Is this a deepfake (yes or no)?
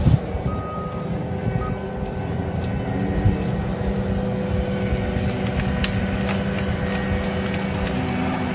no